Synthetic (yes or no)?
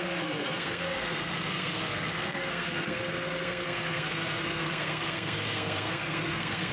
yes